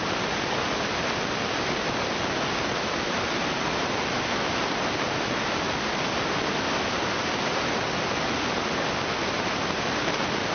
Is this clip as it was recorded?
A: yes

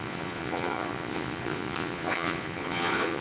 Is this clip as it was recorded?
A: no